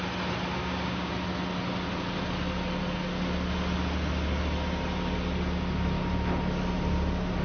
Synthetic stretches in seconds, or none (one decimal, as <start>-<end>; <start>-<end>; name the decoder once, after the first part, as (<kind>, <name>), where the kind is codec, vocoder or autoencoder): 0.6-1.1 (codec, DAC)